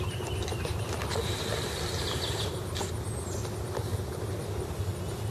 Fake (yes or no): no